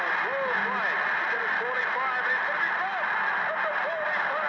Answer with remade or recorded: recorded